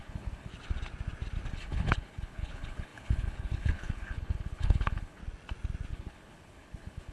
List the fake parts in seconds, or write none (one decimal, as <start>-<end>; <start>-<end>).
0.0-0.5; 1.5-5.2; 5.9-7.1